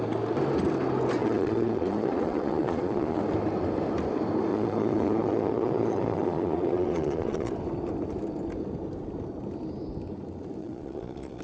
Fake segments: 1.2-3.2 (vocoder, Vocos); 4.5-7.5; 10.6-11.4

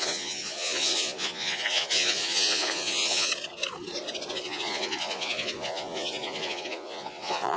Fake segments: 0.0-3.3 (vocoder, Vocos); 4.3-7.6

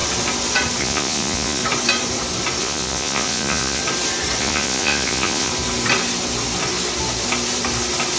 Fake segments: 0.8-1.6 (vocoder, Vocos); 2.6-3.8; 4.4-5.5